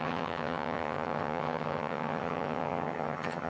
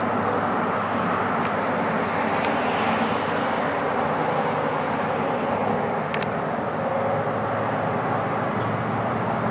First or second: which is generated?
first